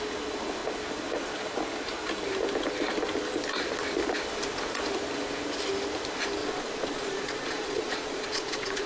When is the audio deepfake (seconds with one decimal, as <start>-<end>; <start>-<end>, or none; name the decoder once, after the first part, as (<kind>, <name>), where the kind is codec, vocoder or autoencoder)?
6.4-8.9 (vocoder, Vocos)